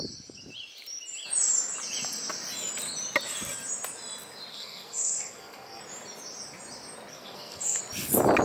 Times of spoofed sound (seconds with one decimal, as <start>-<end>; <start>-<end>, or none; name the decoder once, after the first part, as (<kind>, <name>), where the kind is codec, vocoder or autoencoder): 4.5-5.8 (codec, SNAC); 7.1-7.8